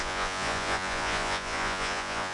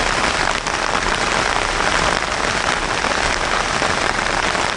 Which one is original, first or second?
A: second